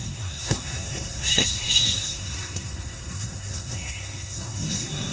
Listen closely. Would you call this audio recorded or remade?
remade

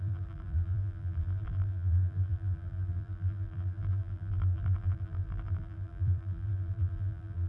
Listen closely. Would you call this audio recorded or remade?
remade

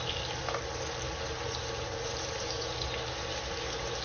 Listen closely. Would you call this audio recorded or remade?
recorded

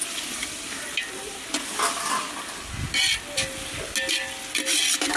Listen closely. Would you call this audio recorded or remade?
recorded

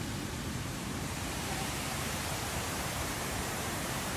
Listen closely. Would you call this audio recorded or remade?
remade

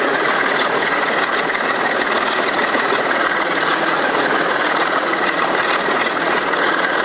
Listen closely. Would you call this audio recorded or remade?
remade